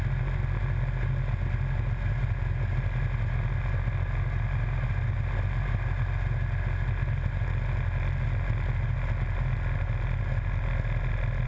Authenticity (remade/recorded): recorded